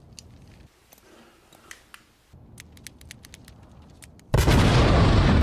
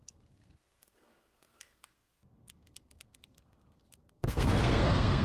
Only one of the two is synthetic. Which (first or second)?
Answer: second